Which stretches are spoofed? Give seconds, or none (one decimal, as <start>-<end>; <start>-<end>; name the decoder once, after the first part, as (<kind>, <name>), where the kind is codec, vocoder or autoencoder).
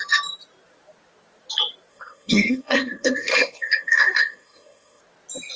1.9-5.0 (codec, SNAC)